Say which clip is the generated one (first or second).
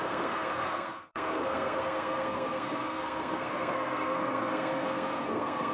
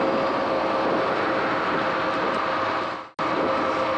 first